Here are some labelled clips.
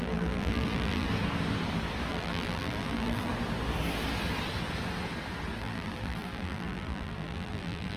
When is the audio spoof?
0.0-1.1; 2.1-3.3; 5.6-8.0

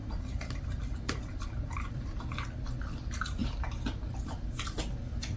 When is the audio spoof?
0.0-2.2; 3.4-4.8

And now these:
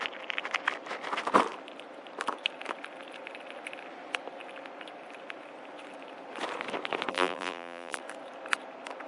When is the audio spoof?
7.1-8.0